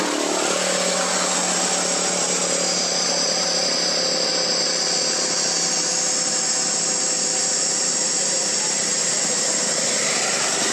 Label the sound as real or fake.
real